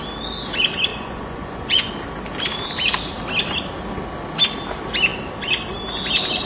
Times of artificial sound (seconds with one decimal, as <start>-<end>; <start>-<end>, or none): 0.9-1.9